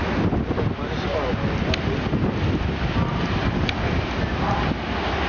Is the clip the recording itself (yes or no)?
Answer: yes